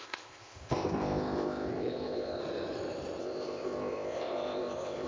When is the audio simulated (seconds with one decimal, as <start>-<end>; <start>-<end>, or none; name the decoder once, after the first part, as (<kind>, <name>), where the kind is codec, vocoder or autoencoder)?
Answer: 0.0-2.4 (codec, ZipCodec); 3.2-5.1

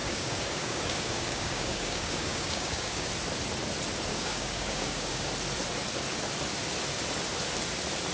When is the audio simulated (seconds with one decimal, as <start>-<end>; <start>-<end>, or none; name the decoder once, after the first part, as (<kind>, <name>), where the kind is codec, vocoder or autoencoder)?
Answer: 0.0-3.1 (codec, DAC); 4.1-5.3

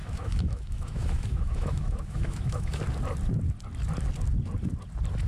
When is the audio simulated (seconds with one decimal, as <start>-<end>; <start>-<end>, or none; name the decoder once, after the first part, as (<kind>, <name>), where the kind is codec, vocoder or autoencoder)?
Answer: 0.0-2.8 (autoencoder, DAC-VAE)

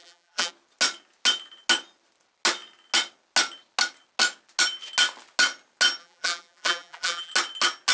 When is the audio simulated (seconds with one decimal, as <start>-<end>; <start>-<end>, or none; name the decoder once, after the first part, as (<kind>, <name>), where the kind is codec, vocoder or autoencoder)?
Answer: 0.0-0.5 (vocoder, BigVGAN v2); 6.0-7.3

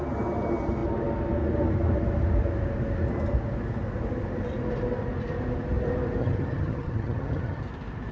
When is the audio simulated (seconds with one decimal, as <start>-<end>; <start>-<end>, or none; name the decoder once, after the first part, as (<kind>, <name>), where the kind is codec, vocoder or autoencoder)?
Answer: 6.2-7.6 (vocoder, HiFi-GAN)

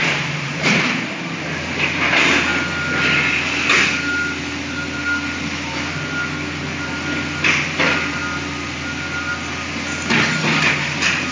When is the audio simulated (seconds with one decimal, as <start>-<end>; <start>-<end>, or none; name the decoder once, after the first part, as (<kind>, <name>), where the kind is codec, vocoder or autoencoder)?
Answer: 0.0-2.5 (vocoder, BigVGAN v2); 7.4-8.2; 10.8-11.3

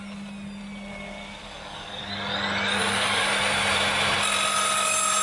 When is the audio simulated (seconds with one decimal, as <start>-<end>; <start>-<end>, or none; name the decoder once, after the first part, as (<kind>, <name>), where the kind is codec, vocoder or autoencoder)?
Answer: 1.4-2.0 (codec, DAC); 2.8-3.3

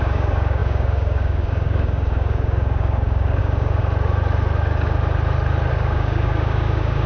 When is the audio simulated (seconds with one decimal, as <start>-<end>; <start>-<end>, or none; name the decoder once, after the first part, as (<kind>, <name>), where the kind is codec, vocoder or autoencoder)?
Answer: 0.0-3.8 (codec, DAC); 5.7-7.1